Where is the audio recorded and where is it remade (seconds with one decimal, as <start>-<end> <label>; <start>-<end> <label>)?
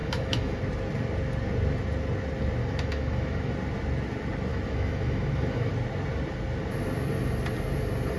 0.0-0.6 remade; 0.6-2.6 recorded; 2.6-3.5 remade; 3.5-4.5 recorded; 4.5-5.7 remade; 5.7-8.2 recorded